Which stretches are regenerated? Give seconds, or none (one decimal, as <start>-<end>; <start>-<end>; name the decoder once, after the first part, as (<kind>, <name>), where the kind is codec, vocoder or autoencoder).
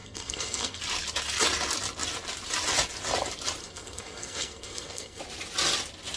0.0-0.8 (codec, SNAC); 3.6-5.2